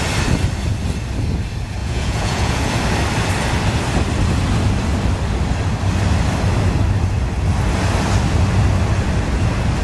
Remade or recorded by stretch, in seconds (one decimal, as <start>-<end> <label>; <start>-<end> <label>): 0.0-1.8 recorded; 1.8-2.7 remade; 2.7-9.8 recorded